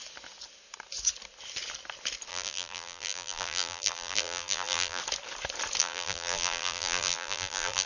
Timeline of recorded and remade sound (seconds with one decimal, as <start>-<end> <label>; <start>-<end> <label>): 0.0-2.3 recorded; 2.3-5.0 remade; 5.0-5.8 recorded; 5.8-7.9 remade

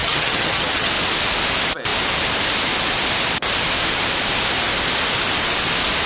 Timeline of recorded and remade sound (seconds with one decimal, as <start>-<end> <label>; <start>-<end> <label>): 0.0-0.9 remade; 0.9-6.1 recorded

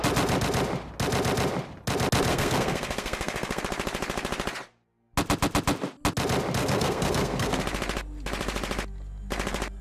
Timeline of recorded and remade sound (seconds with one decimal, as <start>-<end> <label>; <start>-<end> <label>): 0.0-2.3 recorded; 2.3-3.6 remade; 3.6-6.6 recorded; 6.6-7.6 remade; 7.6-9.8 recorded

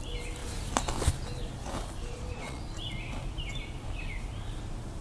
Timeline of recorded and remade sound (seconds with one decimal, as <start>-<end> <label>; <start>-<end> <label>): 0.0-2.0 recorded; 2.0-2.6 remade; 2.6-5.0 recorded

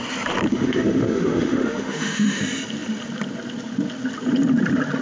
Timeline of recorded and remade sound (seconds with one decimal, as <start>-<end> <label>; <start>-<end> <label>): 0.0-0.5 recorded; 0.5-2.4 remade; 2.4-5.0 recorded

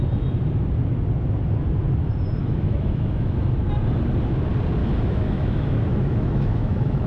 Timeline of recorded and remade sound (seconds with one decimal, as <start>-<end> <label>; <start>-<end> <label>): 0.0-2.4 recorded; 2.4-3.4 remade; 3.4-4.8 recorded; 4.8-7.1 remade

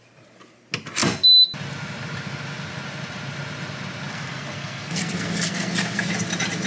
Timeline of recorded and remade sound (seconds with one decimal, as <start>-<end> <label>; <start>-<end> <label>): 0.0-4.1 recorded; 4.1-6.1 remade; 6.1-6.7 recorded